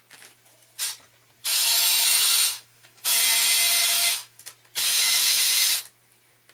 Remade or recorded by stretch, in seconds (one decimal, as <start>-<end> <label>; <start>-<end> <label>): 0.0-1.4 recorded; 1.4-3.2 remade; 3.2-3.8 recorded; 3.8-4.4 remade; 4.4-4.9 recorded; 4.9-5.8 remade; 5.8-6.5 recorded